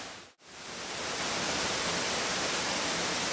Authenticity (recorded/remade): recorded